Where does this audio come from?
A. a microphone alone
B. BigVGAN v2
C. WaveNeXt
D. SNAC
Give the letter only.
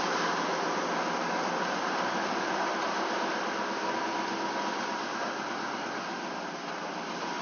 A